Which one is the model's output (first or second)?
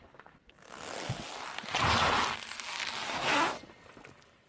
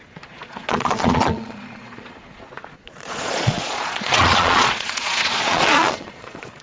second